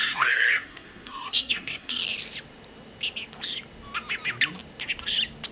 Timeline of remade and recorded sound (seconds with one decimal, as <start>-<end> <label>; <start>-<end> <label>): 0.0-2.0 remade; 2.0-5.5 recorded